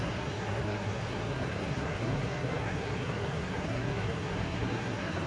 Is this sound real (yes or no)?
no